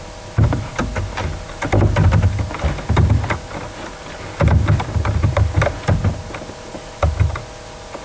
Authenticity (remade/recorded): recorded